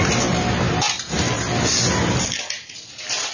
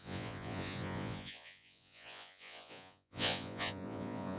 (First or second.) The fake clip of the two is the second